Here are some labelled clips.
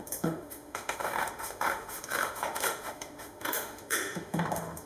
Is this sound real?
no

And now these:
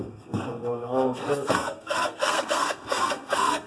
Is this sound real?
no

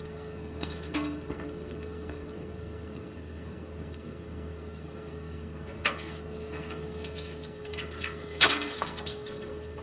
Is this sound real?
no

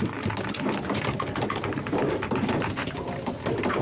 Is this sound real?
yes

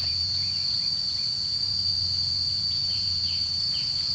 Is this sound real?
no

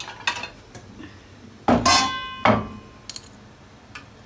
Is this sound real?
yes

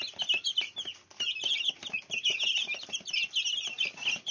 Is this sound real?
yes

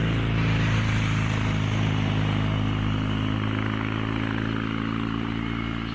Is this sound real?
yes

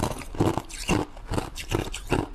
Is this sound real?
yes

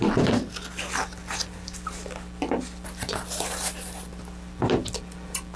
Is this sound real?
yes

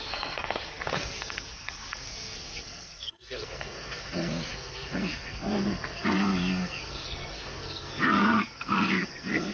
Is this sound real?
no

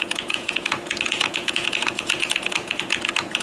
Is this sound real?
no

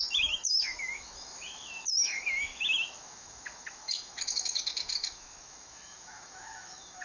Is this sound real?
no